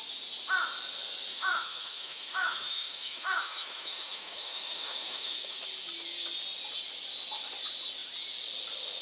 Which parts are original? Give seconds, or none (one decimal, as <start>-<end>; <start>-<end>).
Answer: 0.0-1.3; 5.6-9.0